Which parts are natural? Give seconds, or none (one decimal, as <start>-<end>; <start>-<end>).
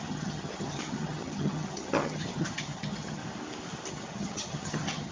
3.2-3.9